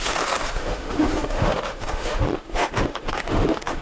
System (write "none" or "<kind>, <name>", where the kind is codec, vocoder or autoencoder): autoencoder, DAC-VAE